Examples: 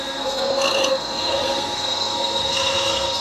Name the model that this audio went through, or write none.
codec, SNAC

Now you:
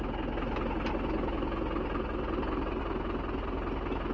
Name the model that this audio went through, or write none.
none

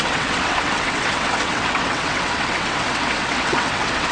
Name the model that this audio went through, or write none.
vocoder, WaveNeXt